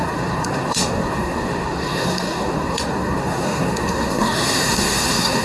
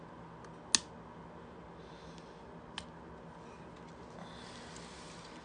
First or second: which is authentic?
second